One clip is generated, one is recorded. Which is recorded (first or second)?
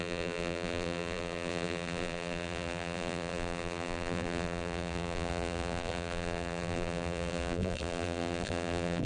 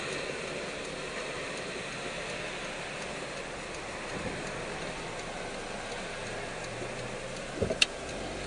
second